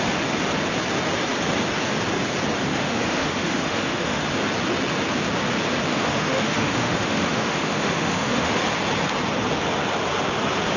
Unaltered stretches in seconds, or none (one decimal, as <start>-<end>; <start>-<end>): 0.0-2.7; 4.2-5.9; 8.6-10.8